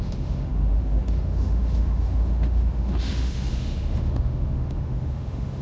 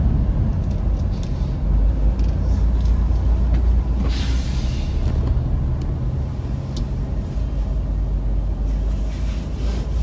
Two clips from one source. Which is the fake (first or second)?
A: first